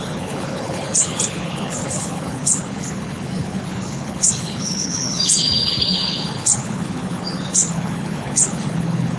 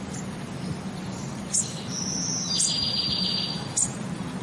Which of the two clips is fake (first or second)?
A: first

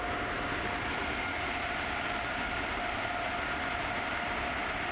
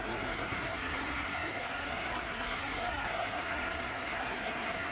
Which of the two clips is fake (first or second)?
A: second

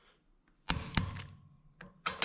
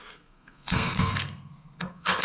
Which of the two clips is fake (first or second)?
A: second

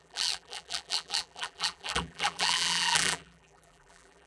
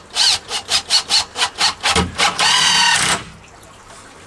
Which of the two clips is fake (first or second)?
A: first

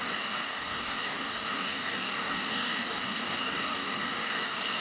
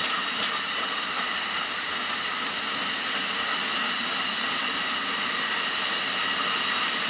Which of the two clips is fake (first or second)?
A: first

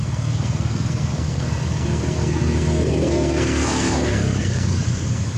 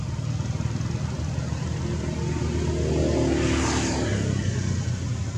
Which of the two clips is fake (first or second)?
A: first